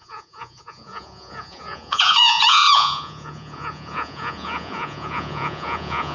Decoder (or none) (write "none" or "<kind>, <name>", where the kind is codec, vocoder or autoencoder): vocoder, Vocos